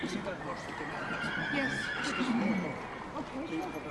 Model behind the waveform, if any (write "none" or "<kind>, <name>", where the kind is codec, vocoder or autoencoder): none